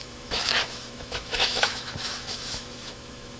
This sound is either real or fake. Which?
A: fake